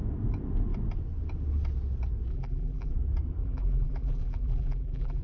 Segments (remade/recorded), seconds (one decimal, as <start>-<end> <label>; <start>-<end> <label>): 0.0-2.3 recorded; 2.3-2.9 remade; 2.9-3.4 recorded; 3.4-5.2 remade